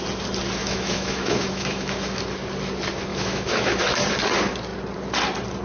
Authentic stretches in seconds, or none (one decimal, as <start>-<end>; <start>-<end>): 0.0-0.6; 2.2-3.1; 3.8-5.6